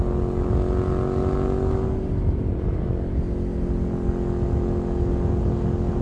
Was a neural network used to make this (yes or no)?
no